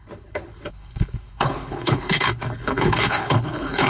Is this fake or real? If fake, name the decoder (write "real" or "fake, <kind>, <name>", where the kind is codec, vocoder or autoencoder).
fake, codec, HILCodec